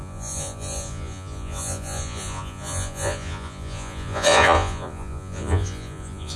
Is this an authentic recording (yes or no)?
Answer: no